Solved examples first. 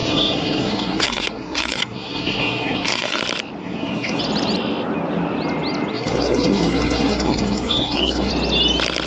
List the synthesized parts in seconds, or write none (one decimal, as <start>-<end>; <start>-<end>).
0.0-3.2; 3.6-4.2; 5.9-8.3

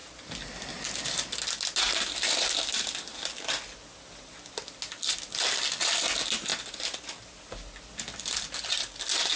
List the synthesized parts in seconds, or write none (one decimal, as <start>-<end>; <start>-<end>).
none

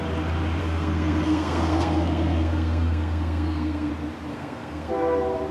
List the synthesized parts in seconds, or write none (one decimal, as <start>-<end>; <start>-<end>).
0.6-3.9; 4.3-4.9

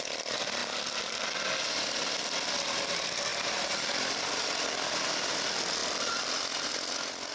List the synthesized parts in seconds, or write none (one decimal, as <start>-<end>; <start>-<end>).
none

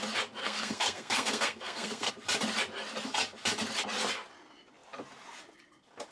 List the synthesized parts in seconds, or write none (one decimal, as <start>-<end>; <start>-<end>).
0.4-2.1